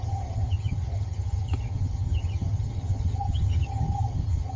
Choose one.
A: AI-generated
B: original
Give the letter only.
A